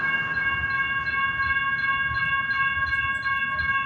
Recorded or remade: recorded